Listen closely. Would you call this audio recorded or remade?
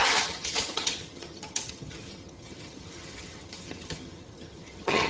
remade